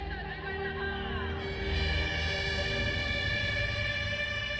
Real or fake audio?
real